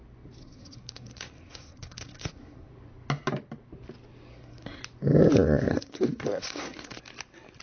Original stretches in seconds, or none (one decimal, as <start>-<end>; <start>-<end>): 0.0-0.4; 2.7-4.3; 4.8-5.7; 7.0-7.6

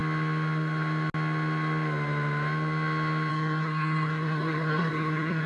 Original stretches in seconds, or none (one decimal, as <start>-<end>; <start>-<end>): 0.0-3.3

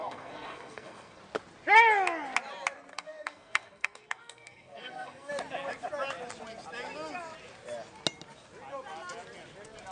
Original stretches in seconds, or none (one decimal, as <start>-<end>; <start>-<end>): 1.2-2.9; 5.3-9.9